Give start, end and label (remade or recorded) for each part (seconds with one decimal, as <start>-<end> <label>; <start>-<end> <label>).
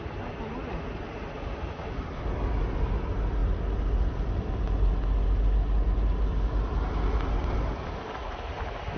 0.0-9.0 recorded